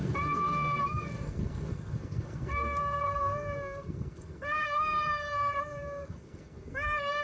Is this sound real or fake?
fake